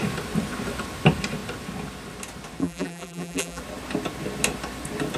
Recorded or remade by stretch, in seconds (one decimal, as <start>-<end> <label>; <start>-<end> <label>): 0.0-2.6 recorded; 2.6-3.6 remade; 3.6-5.2 recorded